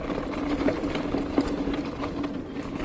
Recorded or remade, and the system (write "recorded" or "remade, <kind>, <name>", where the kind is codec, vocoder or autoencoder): recorded